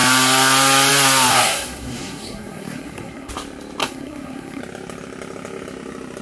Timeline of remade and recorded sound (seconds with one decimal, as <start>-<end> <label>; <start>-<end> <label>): 0.0-1.3 recorded; 1.3-3.3 remade; 3.3-3.8 recorded; 3.8-4.6 remade; 4.6-6.2 recorded